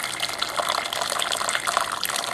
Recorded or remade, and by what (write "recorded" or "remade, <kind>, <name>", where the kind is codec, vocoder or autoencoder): recorded